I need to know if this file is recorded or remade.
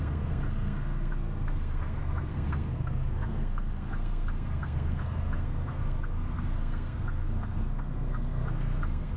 remade